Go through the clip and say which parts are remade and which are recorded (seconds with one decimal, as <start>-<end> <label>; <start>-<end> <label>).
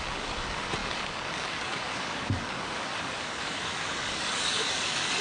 0.0-5.2 remade